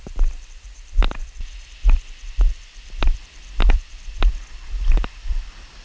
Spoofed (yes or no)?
yes